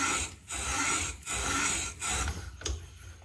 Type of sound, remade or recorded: recorded